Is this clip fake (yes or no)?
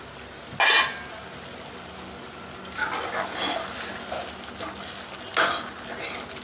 no